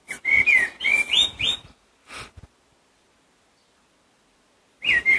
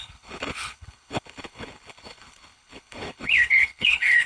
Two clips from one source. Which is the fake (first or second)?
second